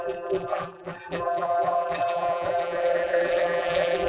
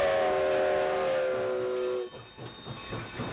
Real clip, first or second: second